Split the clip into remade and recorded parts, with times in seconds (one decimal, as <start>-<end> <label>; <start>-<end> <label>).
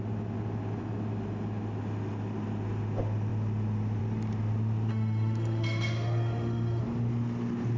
0.0-4.9 recorded; 4.9-6.8 remade; 6.8-7.8 recorded